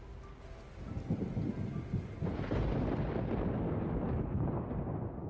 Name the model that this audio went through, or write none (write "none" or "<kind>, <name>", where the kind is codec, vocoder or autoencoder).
none